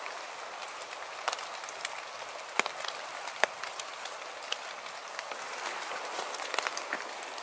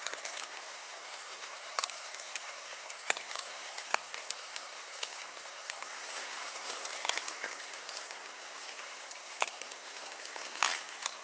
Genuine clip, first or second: first